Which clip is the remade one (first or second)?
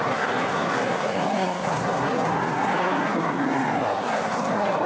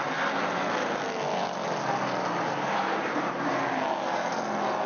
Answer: first